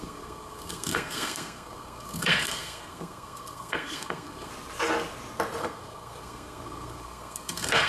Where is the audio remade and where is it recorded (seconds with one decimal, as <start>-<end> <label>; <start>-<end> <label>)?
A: 0.0-4.5 remade; 4.5-5.6 recorded; 5.6-7.9 remade